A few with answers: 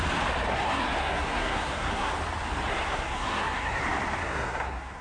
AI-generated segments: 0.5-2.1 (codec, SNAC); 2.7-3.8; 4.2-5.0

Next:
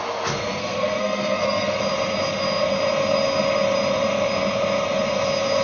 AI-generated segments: 0.6-1.8 (codec, SNAC)